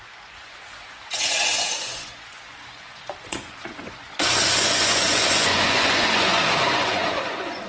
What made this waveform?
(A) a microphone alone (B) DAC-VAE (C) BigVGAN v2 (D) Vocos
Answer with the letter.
D